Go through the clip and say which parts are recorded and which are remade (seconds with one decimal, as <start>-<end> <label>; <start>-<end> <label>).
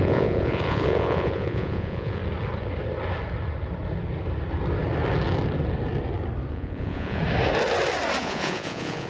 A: 0.0-2.2 remade; 2.2-6.5 recorded; 6.5-7.2 remade; 7.2-8.2 recorded; 8.2-9.1 remade